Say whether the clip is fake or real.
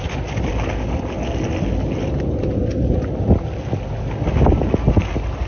real